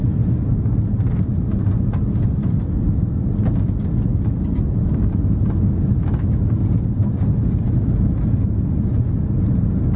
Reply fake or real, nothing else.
real